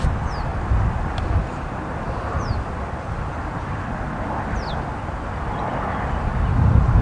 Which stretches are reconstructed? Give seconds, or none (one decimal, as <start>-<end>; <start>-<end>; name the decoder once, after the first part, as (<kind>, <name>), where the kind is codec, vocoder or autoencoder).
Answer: none